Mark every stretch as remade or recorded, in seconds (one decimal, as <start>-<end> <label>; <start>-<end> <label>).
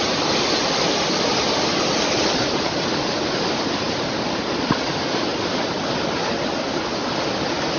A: 0.0-7.8 recorded